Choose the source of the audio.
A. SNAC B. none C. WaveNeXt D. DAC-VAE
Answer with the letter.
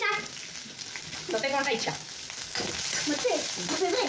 B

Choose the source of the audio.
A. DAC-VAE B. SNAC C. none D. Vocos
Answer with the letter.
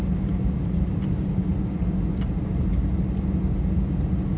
C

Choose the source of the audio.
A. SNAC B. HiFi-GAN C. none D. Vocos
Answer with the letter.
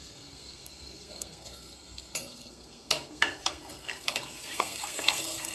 A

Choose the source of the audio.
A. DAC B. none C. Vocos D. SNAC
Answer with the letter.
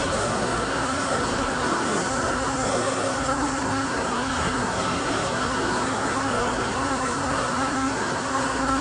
D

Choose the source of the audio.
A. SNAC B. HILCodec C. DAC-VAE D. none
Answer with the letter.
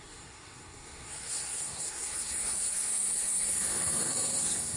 A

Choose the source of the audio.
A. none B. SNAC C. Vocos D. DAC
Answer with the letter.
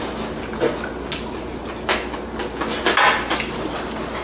A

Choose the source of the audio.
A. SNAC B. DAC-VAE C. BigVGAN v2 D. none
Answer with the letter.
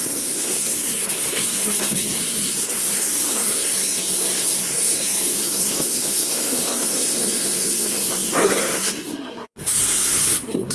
A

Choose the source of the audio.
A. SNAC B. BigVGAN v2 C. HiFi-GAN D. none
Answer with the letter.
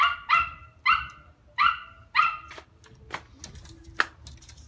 D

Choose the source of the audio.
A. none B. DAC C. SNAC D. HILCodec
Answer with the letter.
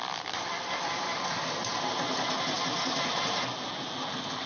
A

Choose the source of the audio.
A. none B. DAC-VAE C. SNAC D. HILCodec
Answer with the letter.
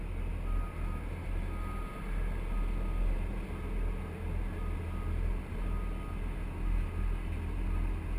A